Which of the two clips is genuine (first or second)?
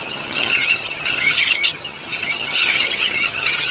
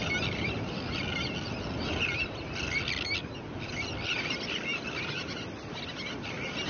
second